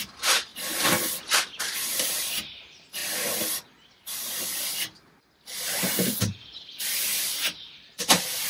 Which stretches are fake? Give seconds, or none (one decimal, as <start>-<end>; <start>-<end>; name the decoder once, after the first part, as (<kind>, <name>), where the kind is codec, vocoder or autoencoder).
0.0-0.5 (vocoder, BigVGAN v2); 1.6-3.0; 6.2-8.5